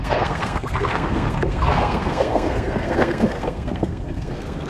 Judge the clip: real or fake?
fake